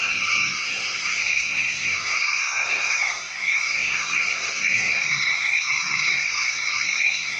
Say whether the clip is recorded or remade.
remade